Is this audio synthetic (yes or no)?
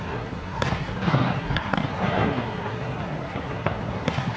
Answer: yes